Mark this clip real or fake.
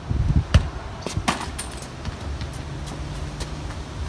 real